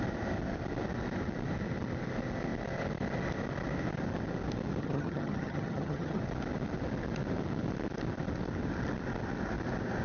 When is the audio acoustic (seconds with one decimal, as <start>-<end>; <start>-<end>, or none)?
0.0-4.8; 6.2-10.0